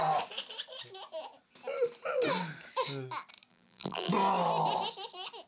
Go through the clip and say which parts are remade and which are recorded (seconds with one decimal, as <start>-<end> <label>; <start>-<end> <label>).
0.0-3.5 recorded; 3.5-4.1 remade; 4.1-5.5 recorded